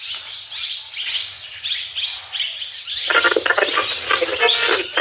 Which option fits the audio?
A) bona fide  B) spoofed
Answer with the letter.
A